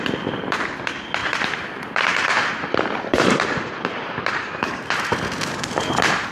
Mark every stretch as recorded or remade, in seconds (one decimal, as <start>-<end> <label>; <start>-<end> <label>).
0.0-1.2 recorded; 1.2-4.5 remade; 4.5-6.3 recorded